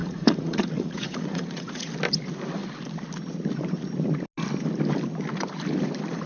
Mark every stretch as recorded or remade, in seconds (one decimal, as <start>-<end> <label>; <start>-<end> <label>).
0.0-1.9 remade; 1.9-6.3 recorded